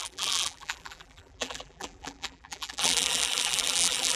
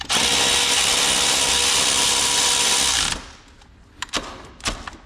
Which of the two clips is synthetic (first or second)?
first